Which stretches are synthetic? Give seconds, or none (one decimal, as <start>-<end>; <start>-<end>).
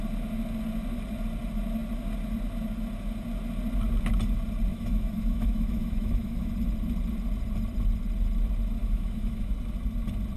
4.7-6.5; 8.8-9.5